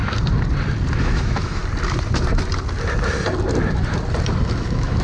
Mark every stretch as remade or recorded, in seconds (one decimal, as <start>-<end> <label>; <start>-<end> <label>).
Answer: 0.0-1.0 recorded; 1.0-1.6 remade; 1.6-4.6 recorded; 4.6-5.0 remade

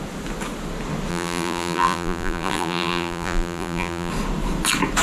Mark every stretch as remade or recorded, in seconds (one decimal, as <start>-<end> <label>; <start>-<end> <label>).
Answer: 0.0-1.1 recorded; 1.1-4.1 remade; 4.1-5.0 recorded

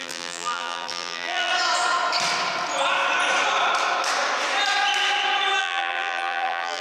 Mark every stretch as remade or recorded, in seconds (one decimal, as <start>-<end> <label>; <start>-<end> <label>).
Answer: 0.0-1.5 remade; 1.5-5.6 recorded; 5.6-6.8 remade

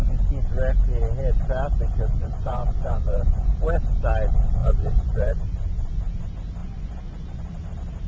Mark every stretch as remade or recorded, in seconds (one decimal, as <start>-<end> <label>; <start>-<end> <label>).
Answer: 0.0-2.1 recorded; 2.1-3.5 remade; 3.5-4.6 recorded; 4.6-5.4 remade; 5.4-6.6 recorded; 6.6-7.5 remade; 7.5-8.1 recorded

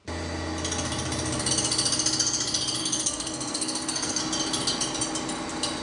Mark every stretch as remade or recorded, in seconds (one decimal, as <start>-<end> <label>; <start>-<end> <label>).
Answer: 0.0-2.8 recorded; 2.8-4.2 remade; 4.2-5.8 recorded

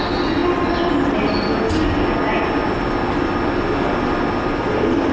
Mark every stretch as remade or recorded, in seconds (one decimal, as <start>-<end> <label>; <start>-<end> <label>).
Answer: 0.0-5.1 recorded

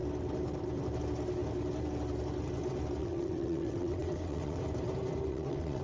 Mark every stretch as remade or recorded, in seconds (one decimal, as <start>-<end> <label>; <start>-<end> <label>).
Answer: 0.0-3.0 recorded; 3.0-4.6 remade; 4.6-5.3 recorded; 5.3-5.8 remade

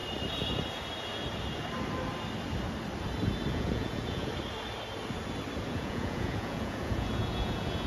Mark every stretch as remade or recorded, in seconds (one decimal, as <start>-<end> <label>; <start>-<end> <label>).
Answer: 0.0-3.5 recorded; 3.5-4.3 remade; 4.3-5.6 recorded; 5.6-7.9 remade